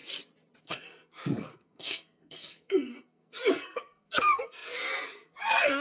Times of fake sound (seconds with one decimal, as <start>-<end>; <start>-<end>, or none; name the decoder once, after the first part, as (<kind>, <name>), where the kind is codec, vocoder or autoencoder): 0.6-5.8 (codec, SNAC)

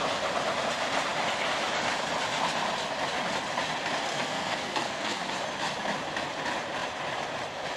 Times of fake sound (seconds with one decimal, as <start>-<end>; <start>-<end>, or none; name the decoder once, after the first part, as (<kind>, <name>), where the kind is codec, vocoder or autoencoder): 4.1-5.3 (codec, SNAC)